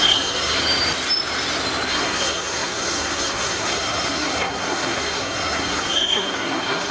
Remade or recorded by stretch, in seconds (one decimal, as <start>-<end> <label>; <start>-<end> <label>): 0.0-0.6 remade; 0.6-1.9 recorded; 1.9-6.9 remade